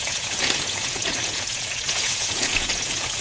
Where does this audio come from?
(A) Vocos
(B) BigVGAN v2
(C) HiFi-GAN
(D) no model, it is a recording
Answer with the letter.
A